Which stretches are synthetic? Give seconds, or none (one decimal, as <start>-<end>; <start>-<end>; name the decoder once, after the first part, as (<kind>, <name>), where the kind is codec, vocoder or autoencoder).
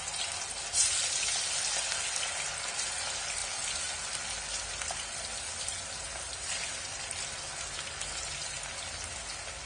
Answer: none